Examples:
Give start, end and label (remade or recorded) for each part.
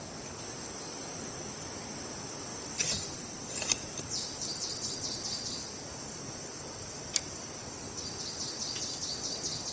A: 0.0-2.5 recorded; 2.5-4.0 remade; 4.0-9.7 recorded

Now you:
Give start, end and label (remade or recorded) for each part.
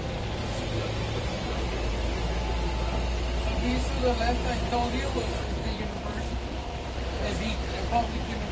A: 0.0-5.6 recorded; 5.6-6.9 remade; 6.9-8.5 recorded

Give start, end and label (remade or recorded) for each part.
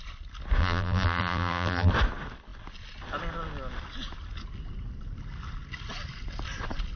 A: 0.0-0.6 recorded; 0.6-1.9 remade; 1.9-7.0 recorded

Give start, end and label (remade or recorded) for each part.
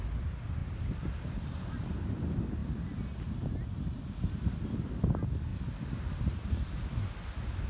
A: 0.0-5.5 recorded; 5.5-6.8 remade; 6.8-7.7 recorded